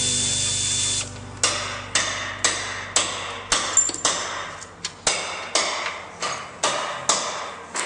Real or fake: real